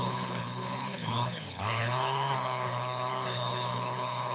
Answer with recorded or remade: remade